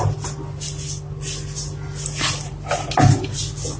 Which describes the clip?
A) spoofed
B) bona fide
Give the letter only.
B